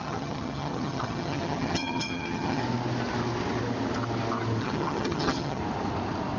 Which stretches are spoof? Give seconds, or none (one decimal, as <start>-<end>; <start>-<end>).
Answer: 0.0-2.6; 4.6-5.6